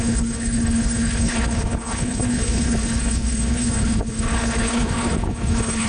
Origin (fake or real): fake